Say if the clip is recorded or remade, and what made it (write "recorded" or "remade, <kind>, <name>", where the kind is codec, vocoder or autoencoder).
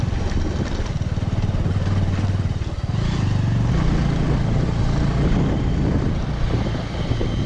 recorded